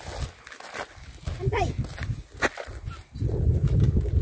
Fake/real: real